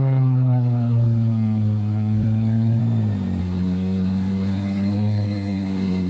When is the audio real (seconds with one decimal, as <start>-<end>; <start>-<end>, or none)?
2.8-3.4